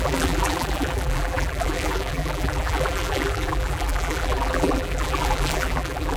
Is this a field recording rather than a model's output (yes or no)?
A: no